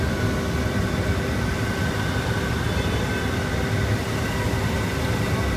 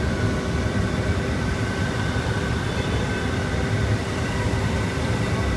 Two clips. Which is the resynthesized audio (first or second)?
second